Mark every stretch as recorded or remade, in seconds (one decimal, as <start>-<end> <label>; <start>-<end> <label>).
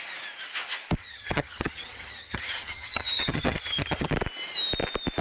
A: 0.0-1.0 recorded; 1.0-4.1 remade; 4.1-5.2 recorded